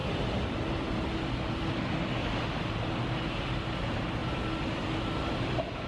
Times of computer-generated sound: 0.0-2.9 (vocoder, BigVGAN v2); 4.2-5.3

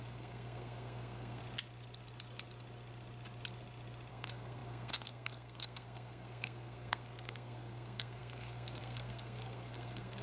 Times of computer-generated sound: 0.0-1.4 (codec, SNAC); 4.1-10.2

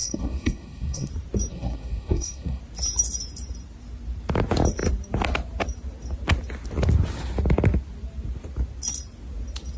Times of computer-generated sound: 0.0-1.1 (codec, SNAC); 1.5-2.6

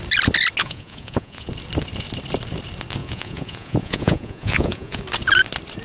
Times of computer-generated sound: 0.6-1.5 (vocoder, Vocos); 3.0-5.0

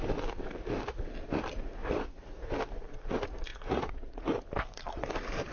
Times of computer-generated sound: 1.8-2.5 (vocoder, Vocos); 3.5-4.4

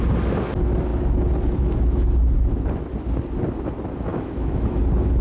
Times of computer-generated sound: 4.1-4.8 (autoencoder, DAC-VAE)